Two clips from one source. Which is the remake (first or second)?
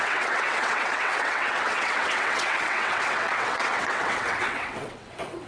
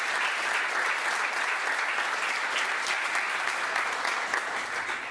first